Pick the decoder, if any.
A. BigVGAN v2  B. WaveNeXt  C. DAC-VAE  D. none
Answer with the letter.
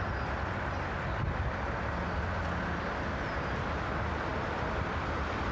D